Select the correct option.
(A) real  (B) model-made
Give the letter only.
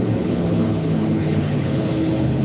B